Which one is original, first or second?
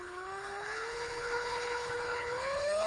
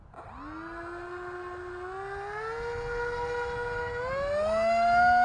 second